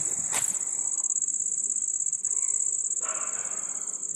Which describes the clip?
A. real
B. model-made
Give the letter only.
A